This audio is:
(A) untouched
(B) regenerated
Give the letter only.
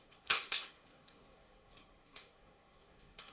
B